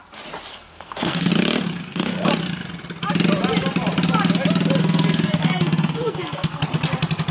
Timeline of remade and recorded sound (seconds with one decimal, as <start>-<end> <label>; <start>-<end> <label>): 0.0-0.5 recorded; 0.5-1.3 remade; 1.3-1.8 recorded; 1.8-2.3 remade; 2.3-4.8 recorded; 4.8-6.6 remade; 6.6-7.3 recorded